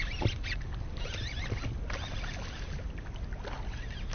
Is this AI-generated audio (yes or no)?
no